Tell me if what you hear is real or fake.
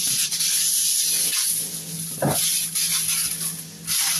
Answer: fake